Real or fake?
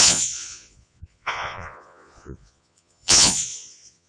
fake